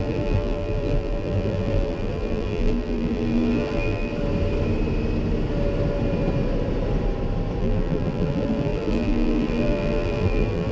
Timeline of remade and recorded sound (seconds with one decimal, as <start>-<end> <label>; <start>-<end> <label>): 0.0-4.1 remade; 4.1-7.6 recorded; 7.6-10.7 remade